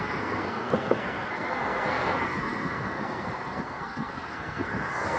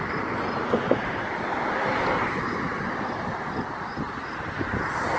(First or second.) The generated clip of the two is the first